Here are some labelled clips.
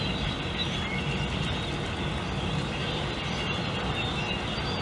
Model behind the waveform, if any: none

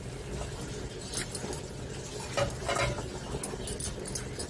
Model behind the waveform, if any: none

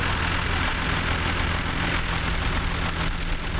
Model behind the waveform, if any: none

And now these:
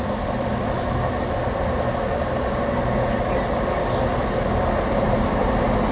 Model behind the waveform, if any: none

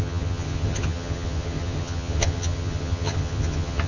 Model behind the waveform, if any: vocoder, HiFi-GAN